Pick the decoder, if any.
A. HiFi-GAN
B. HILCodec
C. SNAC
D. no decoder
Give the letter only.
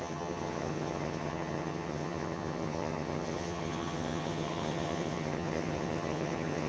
A